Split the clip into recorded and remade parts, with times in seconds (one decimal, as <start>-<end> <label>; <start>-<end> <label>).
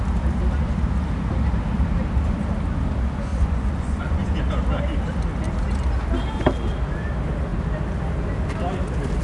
0.0-3.3 recorded; 3.3-4.4 remade; 4.4-9.2 recorded